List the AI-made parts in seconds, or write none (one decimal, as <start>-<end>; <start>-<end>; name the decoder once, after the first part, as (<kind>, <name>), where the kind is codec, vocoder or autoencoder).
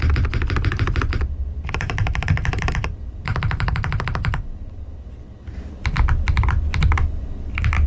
0.0-6.7 (vocoder, BigVGAN v2)